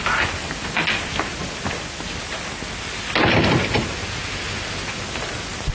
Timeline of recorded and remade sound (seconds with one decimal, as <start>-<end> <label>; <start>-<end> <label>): 0.0-5.7 recorded